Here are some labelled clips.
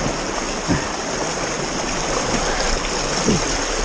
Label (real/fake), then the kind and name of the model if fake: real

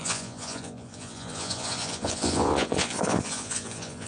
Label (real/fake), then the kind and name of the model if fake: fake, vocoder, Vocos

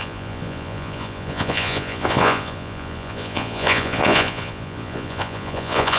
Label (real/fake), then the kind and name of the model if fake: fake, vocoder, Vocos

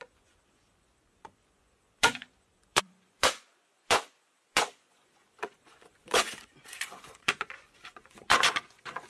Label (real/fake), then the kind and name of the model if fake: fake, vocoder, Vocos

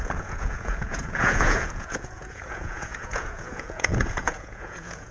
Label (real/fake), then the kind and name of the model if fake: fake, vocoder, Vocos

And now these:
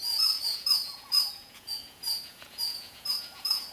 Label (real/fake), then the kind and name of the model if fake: fake, vocoder, Vocos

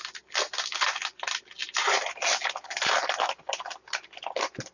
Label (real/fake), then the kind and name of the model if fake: real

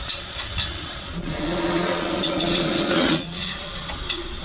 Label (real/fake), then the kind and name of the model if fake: fake, vocoder, Vocos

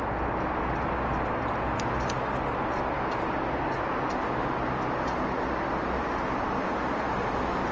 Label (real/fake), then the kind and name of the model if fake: real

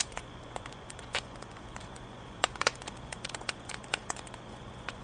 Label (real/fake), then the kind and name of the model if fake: fake, vocoder, Vocos